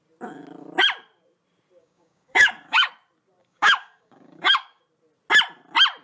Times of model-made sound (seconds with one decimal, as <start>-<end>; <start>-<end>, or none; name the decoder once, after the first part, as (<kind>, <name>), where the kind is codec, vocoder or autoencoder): 1.8-2.9 (codec, DAC); 3.4-4.8